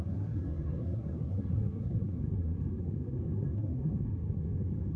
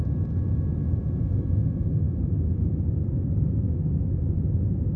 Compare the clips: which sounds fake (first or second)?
first